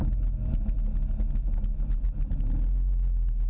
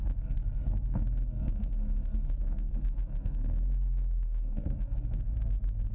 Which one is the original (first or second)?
first